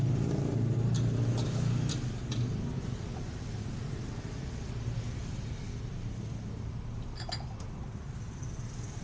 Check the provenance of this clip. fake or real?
real